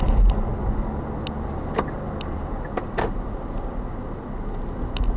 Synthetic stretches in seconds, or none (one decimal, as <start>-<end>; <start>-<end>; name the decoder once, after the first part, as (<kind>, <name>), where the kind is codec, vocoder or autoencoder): none